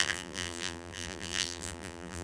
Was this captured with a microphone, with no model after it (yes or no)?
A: no